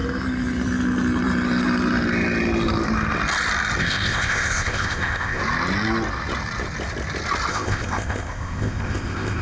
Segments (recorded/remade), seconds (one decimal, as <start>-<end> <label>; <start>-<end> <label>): 0.0-3.8 recorded; 3.8-5.4 remade; 5.4-7.5 recorded; 7.5-9.4 remade